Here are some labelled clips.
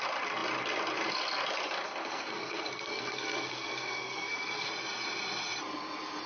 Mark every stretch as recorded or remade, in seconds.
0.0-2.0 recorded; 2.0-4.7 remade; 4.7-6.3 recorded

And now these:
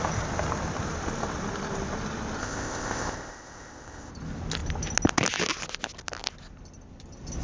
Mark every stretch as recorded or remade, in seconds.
0.0-2.4 recorded; 2.4-4.1 remade; 4.1-7.4 recorded

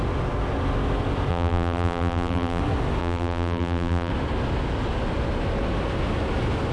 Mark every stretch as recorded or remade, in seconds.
0.0-1.3 recorded; 1.3-2.6 remade; 2.6-3.0 recorded; 3.0-4.1 remade; 4.1-6.7 recorded

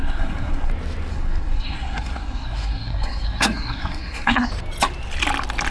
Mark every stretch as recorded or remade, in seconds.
0.0-0.7 remade; 0.7-1.1 recorded; 1.1-4.5 remade; 4.5-5.7 recorded

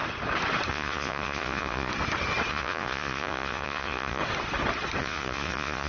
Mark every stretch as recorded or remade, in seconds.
0.0-0.7 recorded; 0.7-1.9 remade; 1.9-2.5 recorded; 2.5-4.2 remade; 4.2-5.0 recorded; 5.0-5.9 remade

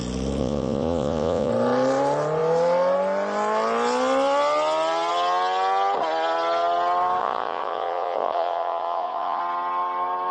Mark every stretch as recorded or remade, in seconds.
0.0-0.4 recorded; 0.4-1.5 remade; 1.5-7.2 recorded; 7.2-9.4 remade; 9.4-10.3 recorded

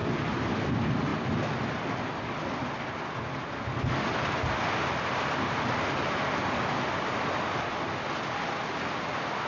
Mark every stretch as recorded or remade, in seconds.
0.0-9.5 recorded

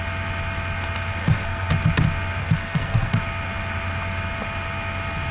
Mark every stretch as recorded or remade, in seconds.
0.0-1.2 recorded; 1.2-1.7 remade; 1.7-2.4 recorded; 2.4-3.2 remade; 3.2-5.3 recorded